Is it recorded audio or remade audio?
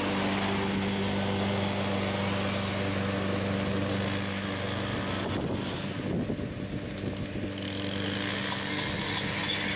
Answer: recorded